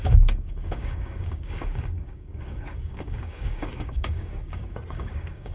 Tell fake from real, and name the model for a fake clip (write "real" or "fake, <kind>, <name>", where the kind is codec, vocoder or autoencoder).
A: fake, codec, DAC